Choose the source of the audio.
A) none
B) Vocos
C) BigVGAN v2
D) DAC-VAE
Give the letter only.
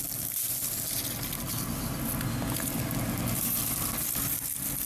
A